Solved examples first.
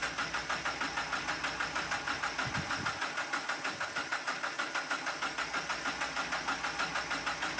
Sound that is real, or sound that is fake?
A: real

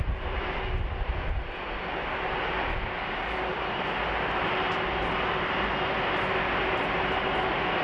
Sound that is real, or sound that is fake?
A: real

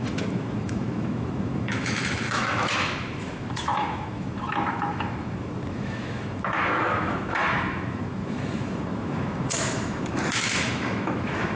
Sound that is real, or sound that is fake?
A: fake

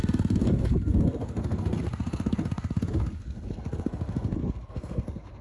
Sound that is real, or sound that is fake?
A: fake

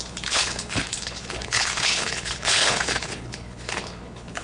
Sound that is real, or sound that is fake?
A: fake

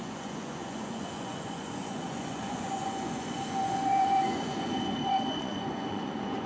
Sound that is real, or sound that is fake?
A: fake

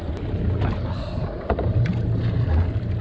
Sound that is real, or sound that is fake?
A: real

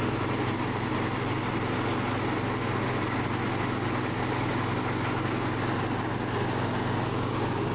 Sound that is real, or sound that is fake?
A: real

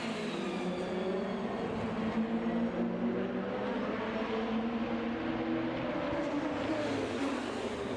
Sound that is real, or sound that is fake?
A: real